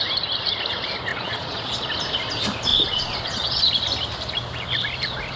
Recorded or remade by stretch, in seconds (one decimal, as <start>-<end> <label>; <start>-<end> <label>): 0.0-1.1 recorded; 1.1-1.9 remade; 1.9-2.7 recorded; 2.7-3.6 remade; 3.6-5.4 recorded